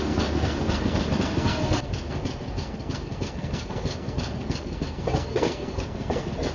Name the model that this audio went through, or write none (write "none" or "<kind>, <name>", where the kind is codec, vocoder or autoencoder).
codec, SNAC